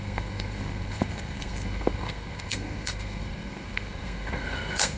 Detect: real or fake fake